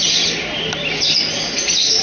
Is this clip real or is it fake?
real